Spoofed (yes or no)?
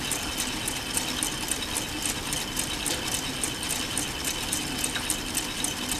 no